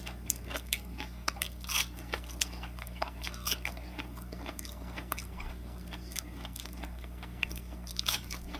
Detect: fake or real fake